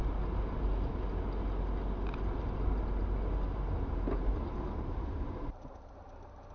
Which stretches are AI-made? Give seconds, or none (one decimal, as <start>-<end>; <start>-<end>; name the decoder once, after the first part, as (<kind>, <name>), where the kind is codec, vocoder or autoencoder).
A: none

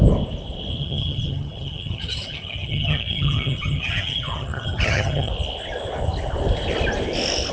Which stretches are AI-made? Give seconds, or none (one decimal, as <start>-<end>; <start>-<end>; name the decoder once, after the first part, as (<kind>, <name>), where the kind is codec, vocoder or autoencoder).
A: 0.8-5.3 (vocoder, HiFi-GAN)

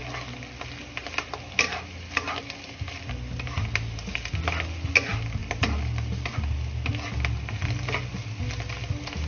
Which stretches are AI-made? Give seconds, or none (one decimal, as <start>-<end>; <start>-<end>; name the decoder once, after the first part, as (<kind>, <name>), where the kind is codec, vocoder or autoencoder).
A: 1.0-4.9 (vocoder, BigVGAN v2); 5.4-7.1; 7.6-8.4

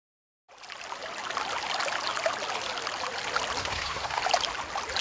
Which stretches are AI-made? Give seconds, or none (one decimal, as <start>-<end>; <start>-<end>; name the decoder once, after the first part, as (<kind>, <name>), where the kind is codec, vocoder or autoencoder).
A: 3.6-4.2 (codec, SNAC)